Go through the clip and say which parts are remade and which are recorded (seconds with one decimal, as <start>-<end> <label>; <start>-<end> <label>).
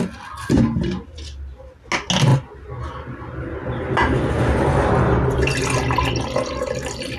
0.0-7.2 recorded